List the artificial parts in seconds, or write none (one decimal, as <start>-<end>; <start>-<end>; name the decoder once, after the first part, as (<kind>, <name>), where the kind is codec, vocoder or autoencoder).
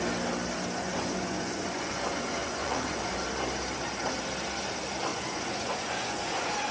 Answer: 0.8-3.2 (vocoder, Vocos); 5.1-6.7